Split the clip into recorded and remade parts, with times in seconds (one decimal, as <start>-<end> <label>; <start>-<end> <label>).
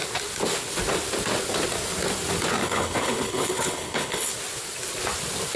0.0-2.6 recorded; 2.6-4.3 remade; 4.3-5.6 recorded